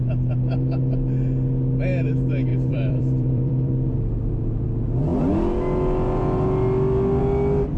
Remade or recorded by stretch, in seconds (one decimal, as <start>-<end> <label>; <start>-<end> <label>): 0.0-2.5 recorded; 2.5-3.7 remade; 3.7-7.8 recorded